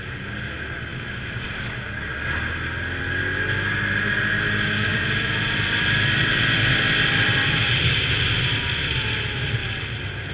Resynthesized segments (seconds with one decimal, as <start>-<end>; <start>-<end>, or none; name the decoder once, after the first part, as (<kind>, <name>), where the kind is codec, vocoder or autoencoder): 0.9-3.0 (vocoder, BigVGAN v2); 4.9-7.8; 9.6-10.3